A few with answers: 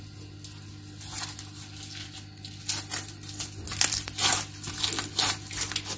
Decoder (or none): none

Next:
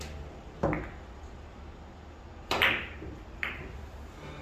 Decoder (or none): none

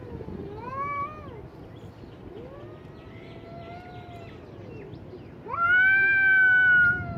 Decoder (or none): none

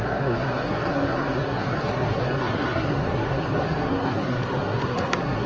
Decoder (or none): codec, SNAC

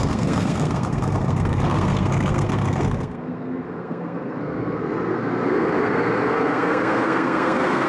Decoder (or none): codec, SNAC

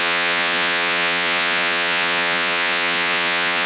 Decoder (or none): vocoder, Vocos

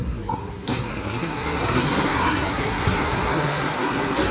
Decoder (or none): codec, SNAC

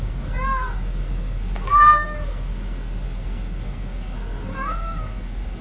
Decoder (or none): codec, SNAC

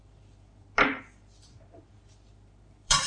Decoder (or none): vocoder, BigVGAN v2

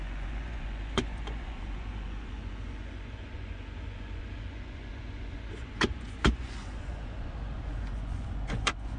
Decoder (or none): vocoder, Vocos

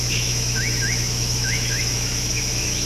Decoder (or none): autoencoder, DAC-VAE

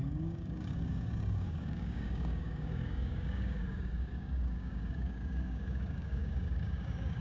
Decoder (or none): codec, DAC